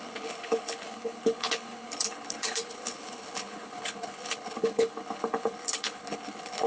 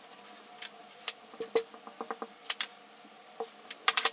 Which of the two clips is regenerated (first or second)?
first